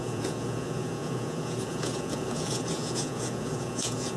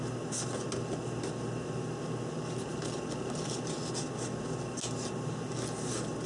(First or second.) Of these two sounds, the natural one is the second